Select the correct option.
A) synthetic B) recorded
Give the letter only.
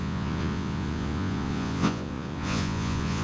A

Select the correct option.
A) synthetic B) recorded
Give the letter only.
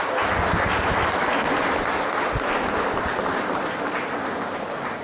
B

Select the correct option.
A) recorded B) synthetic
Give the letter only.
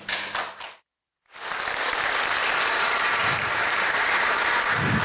A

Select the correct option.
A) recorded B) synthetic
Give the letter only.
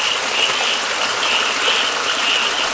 A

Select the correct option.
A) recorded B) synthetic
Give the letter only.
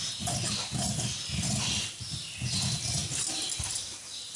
A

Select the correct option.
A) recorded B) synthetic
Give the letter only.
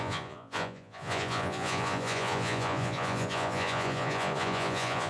B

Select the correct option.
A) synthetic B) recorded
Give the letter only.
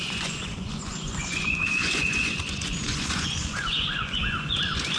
A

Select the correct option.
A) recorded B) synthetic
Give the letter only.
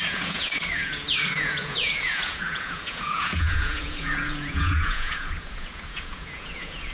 B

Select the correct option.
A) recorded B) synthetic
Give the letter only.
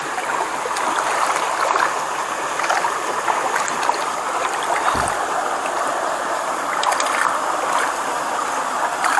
A